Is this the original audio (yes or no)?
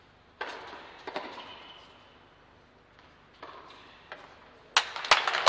yes